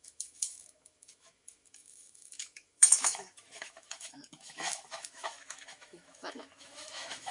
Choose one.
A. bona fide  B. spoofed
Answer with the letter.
B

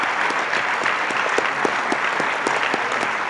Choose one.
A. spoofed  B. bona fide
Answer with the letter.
B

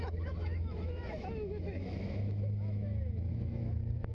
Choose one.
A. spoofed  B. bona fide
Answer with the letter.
A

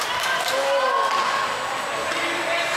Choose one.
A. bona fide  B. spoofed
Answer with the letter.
A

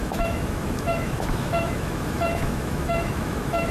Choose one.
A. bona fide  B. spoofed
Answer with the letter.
B